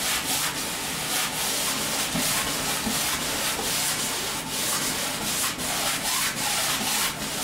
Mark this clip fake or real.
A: real